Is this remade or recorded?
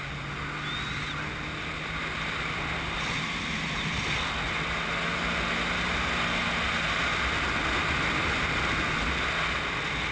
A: recorded